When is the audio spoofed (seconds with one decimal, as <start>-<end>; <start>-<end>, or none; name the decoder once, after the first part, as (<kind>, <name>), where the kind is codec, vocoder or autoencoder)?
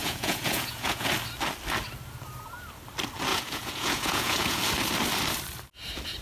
0.0-1.1 (vocoder, Vocos); 3.3-4.6